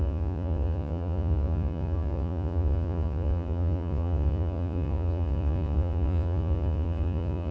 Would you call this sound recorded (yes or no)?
no